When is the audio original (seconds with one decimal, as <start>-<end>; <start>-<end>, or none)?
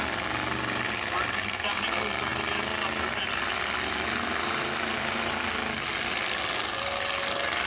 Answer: 0.0-7.7